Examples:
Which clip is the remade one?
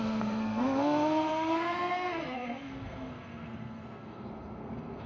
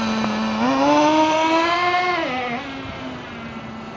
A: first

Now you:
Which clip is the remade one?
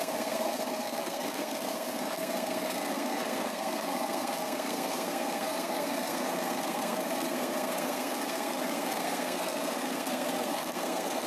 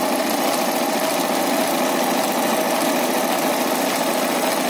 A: first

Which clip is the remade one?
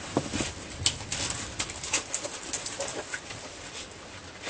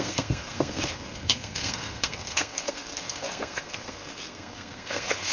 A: second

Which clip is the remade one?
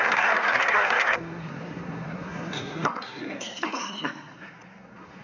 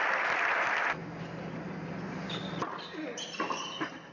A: first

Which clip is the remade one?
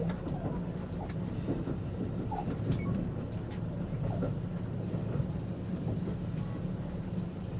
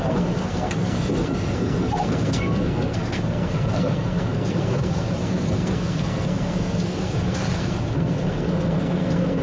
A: second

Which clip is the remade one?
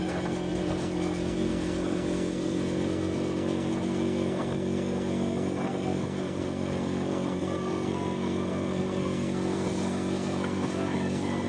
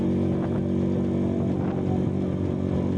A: first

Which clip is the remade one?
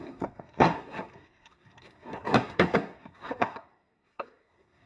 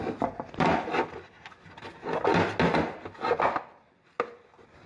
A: first